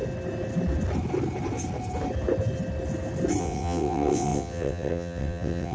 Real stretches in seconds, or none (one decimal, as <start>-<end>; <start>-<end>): 0.0-3.4